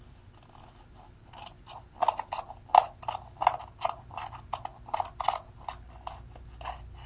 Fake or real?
real